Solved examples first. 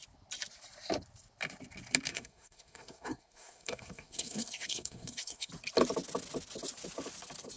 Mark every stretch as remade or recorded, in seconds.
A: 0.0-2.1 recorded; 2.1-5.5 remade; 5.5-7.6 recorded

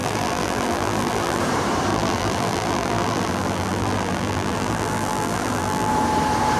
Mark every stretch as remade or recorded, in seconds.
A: 0.0-1.4 remade; 1.4-1.9 recorded; 1.9-5.9 remade; 5.9-6.6 recorded

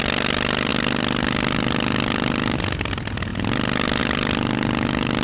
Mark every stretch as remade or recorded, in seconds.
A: 0.0-5.2 recorded

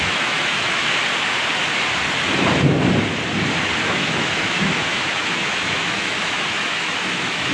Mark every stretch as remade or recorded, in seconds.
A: 0.0-0.8 remade; 0.8-3.8 recorded; 3.8-7.5 remade

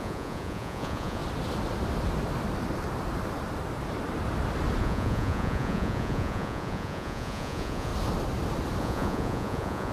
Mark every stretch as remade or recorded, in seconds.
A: 0.0-1.2 remade; 1.2-4.8 recorded; 4.8-7.9 remade; 7.9-8.8 recorded; 8.8-9.9 remade

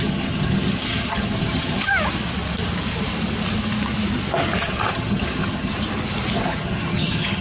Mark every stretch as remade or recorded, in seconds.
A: 0.0-1.9 remade; 1.9-4.6 recorded; 4.6-5.7 remade; 5.7-6.3 recorded; 6.3-7.4 remade

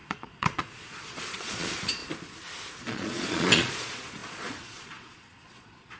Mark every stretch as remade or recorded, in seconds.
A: 0.0-2.0 remade; 2.0-2.8 recorded; 2.8-6.0 remade

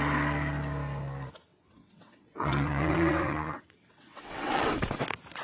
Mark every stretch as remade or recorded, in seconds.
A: 0.0-1.5 recorded; 1.5-4.7 remade; 4.7-5.4 recorded